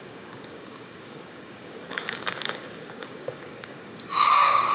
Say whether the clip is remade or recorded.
remade